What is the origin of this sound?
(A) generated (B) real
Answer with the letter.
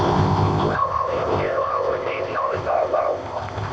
A